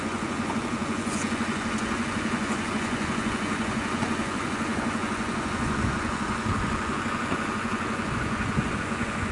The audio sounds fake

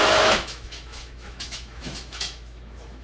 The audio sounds fake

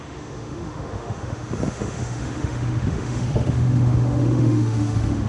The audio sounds fake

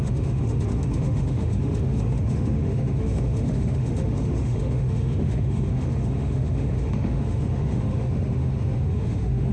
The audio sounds fake